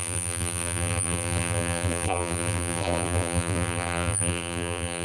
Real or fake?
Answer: fake